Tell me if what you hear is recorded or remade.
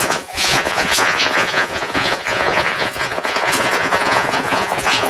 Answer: remade